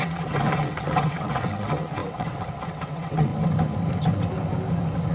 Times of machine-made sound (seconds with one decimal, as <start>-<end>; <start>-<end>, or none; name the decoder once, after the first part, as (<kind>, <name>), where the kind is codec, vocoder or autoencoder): 0.0-3.3 (vocoder, WaveNeXt)